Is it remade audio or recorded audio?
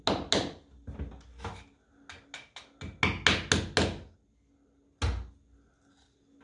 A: recorded